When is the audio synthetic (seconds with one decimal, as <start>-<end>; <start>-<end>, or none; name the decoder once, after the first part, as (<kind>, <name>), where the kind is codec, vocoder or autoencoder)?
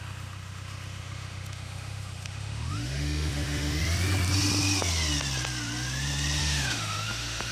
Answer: 0.0-3.8 (autoencoder, DAC-VAE); 6.4-7.5